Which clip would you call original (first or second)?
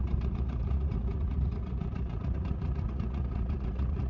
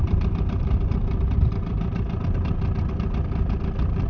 second